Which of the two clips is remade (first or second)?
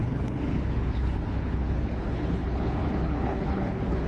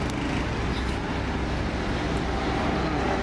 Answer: first